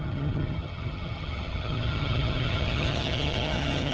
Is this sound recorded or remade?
remade